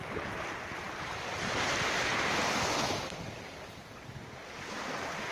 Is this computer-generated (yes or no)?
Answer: no